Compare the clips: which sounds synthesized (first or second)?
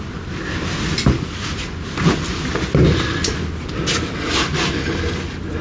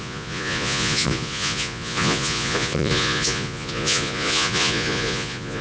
second